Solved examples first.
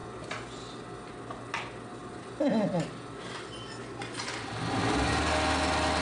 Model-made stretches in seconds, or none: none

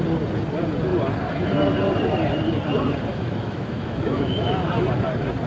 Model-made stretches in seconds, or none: 3.1-4.7